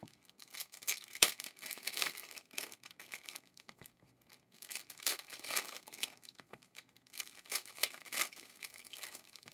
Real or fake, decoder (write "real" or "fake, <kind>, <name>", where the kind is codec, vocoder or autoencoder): fake, codec, SNAC